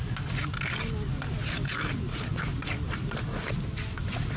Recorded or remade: recorded